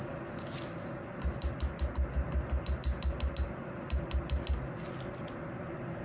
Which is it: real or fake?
real